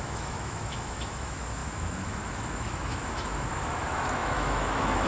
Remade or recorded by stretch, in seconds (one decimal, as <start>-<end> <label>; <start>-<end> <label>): 0.0-5.1 remade